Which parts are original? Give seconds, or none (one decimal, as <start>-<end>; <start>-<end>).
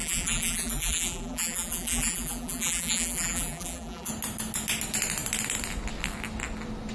4.1-6.9